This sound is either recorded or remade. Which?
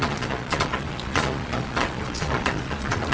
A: remade